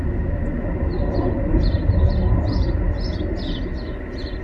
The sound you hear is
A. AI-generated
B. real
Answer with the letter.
B